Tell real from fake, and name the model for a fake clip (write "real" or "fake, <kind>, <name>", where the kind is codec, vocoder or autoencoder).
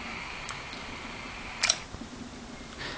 real